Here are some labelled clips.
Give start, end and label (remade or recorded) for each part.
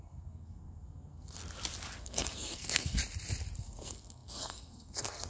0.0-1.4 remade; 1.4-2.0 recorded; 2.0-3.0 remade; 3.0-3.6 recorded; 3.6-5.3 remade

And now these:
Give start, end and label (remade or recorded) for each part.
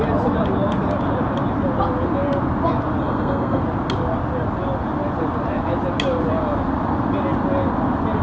0.0-3.0 recorded; 3.0-3.6 remade; 3.6-8.2 recorded